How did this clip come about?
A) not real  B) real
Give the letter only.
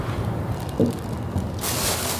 B